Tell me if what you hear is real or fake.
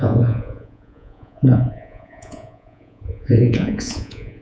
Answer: fake